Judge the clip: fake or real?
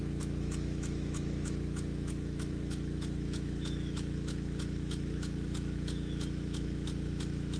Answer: fake